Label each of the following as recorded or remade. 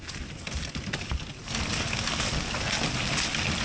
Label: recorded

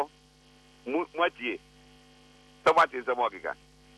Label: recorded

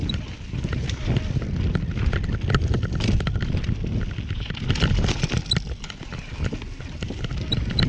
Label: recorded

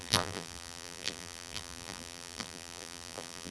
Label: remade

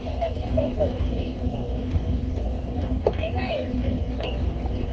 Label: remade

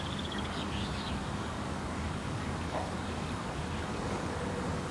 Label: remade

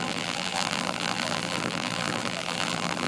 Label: remade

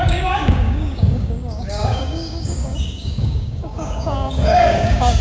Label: remade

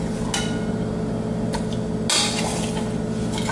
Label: recorded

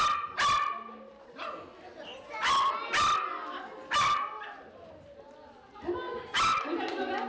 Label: recorded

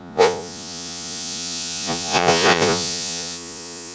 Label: remade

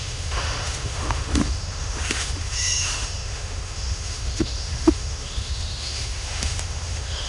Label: remade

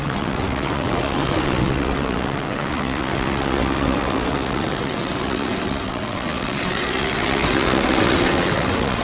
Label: remade